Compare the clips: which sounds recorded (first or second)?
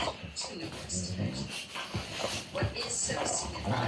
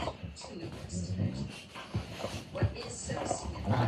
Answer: first